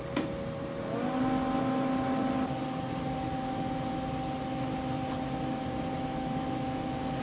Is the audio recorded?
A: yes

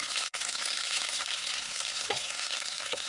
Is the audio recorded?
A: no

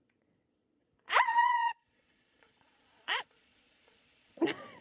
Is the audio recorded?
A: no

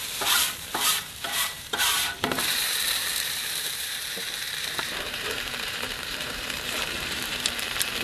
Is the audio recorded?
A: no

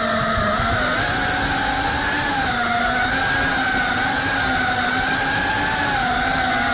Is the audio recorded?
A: yes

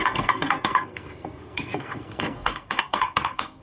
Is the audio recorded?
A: no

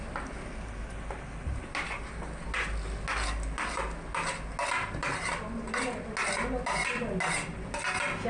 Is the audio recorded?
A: yes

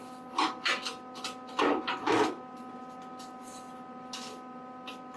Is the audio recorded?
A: yes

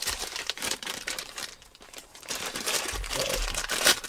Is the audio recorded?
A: no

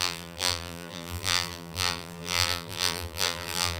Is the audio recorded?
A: no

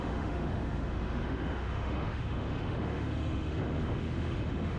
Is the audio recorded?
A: no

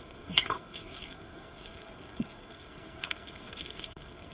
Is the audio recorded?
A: no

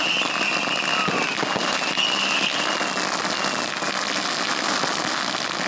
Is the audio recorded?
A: yes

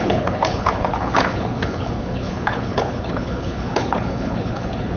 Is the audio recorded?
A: no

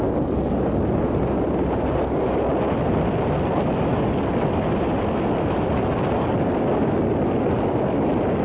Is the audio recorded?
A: yes